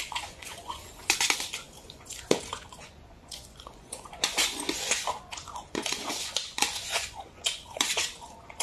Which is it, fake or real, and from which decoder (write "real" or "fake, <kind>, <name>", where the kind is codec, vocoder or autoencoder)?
fake, vocoder, Vocos